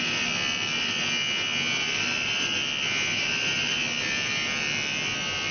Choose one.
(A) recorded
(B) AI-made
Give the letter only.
A